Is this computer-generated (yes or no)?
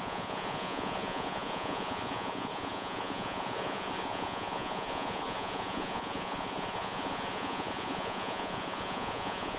yes